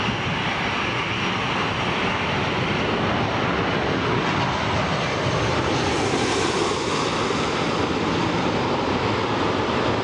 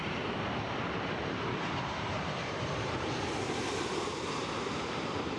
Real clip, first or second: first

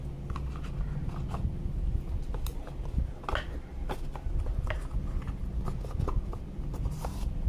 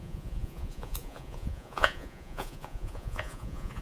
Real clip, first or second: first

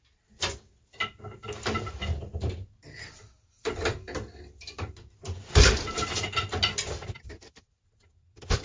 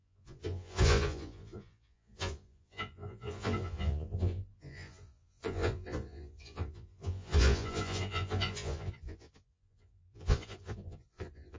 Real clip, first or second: first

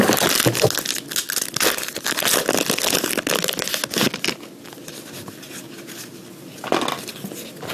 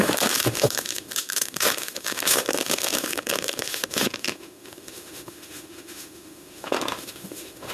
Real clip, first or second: first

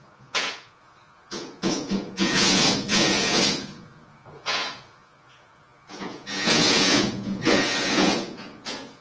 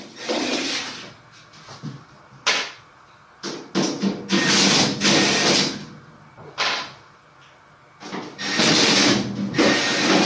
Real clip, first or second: second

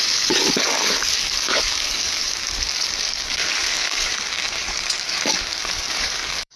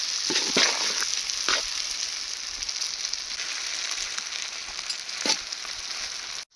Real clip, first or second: second